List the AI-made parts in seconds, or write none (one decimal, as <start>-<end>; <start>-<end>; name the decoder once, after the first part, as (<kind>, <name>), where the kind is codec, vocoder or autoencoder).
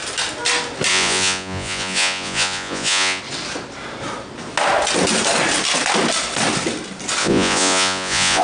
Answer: 0.9-3.2 (vocoder, Vocos); 7.2-8.4